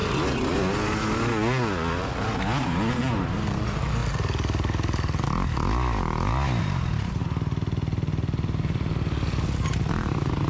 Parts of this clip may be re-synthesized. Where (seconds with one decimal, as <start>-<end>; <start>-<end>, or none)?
2.6-4.0; 6.6-7.2; 9.9-10.5